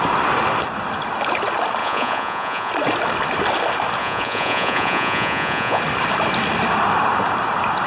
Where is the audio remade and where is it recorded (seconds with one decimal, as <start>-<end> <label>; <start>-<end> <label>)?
0.0-1.8 recorded; 1.8-2.7 remade; 2.7-4.0 recorded; 4.0-5.8 remade; 5.8-7.9 recorded